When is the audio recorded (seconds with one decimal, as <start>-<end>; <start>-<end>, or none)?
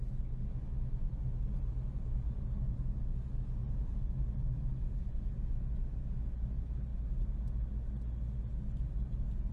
0.0-9.5